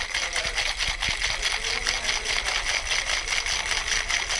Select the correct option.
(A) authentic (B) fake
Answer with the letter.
A